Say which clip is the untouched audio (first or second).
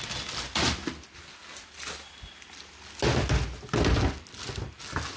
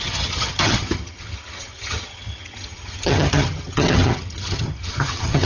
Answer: first